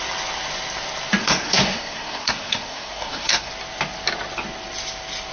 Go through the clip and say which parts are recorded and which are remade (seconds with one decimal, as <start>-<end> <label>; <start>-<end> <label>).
0.0-1.2 recorded; 1.2-3.5 remade; 3.5-5.3 recorded